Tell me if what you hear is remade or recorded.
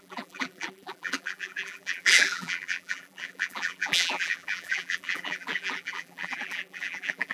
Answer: remade